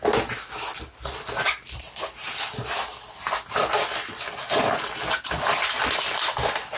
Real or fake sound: real